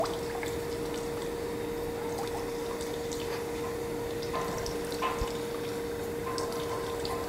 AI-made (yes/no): no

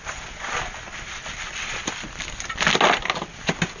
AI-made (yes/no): no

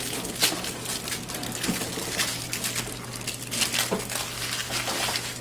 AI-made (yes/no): no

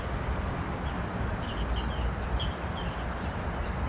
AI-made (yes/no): no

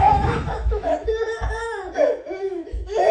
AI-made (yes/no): yes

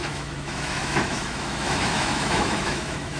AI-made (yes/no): yes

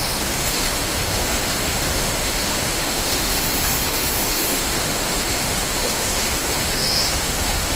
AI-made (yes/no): yes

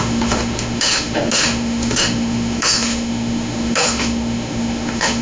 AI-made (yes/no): yes